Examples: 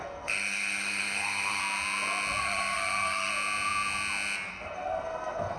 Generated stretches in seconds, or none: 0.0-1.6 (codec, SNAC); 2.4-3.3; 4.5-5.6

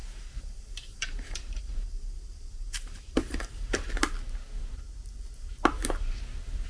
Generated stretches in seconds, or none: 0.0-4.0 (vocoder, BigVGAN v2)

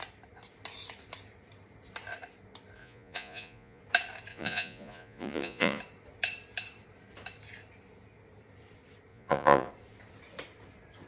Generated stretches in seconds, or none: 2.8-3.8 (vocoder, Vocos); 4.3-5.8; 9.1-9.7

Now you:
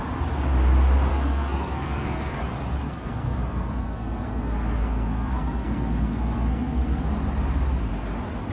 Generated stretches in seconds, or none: 1.1-2.4 (codec, SNAC); 2.9-7.0

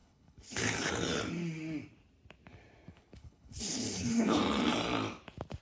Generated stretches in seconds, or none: 0.0-0.9 (codec, HILCodec); 2.9-4.4

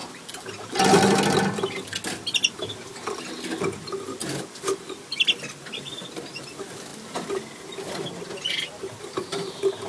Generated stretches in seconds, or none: none

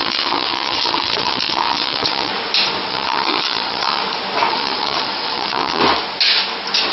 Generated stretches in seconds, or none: 0.0-2.3 (vocoder, WaveNeXt); 2.9-4.0; 4.5-5.8